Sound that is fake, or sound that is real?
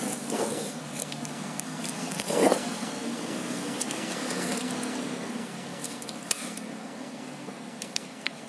fake